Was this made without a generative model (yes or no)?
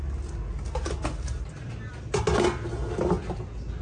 yes